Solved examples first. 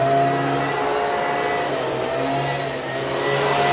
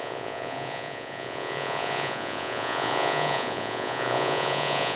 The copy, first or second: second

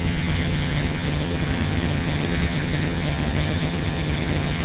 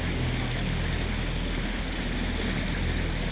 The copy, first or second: first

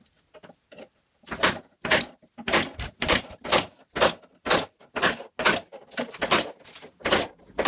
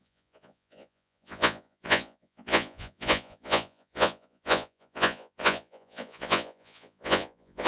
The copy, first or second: second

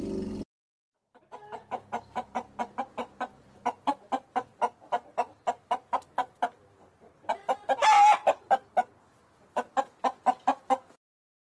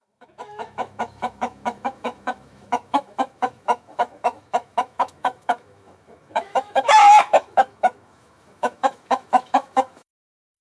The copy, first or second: second